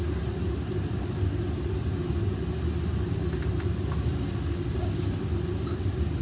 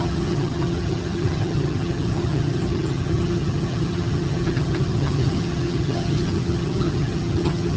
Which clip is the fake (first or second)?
second